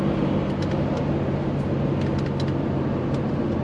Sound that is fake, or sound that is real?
real